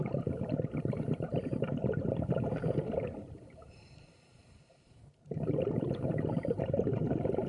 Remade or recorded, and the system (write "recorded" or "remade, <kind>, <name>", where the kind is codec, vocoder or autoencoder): remade, vocoder, BigVGAN v2